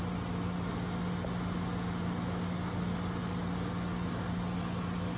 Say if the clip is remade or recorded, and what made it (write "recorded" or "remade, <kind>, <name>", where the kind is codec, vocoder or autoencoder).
recorded